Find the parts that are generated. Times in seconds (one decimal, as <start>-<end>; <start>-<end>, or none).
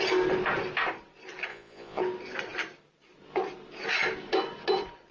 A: 1.5-2.0